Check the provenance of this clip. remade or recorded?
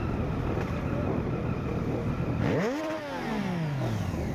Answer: recorded